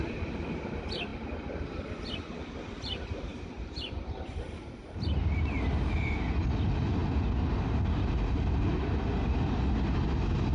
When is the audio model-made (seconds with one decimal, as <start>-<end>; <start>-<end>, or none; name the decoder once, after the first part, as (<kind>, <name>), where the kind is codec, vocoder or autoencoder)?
3.3-5.7 (vocoder, BigVGAN v2)